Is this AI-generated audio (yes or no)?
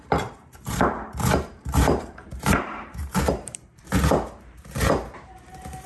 yes